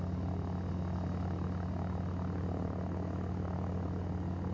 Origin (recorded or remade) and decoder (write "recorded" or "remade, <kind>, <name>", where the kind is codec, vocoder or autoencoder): recorded